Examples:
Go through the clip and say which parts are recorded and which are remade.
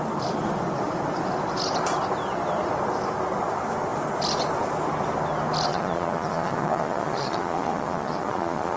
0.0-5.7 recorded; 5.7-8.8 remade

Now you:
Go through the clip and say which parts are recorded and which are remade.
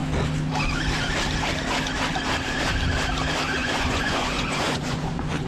0.0-3.6 recorded; 3.6-5.5 remade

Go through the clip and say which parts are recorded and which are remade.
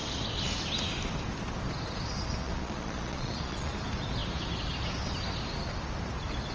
0.0-2.4 recorded; 2.4-3.7 remade; 3.7-6.5 recorded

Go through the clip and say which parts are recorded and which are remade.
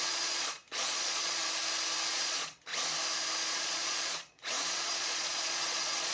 0.0-1.4 remade; 1.4-2.1 recorded; 2.1-2.7 remade; 2.7-3.5 recorded; 3.5-6.1 remade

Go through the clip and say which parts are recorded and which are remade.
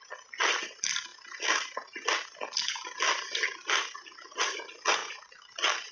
0.0-5.0 recorded; 5.0-5.5 remade; 5.5-5.9 recorded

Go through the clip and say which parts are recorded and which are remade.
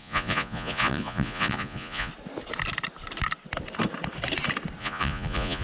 0.0-2.1 remade; 2.1-4.8 recorded; 4.8-5.6 remade